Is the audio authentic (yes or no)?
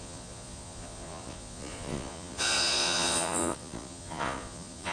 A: no